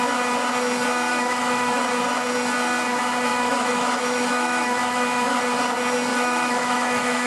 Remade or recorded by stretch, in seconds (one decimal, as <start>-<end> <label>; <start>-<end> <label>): 0.0-1.1 recorded; 1.1-1.8 remade; 1.8-3.3 recorded; 3.3-5.4 remade; 5.4-6.1 recorded; 6.1-7.3 remade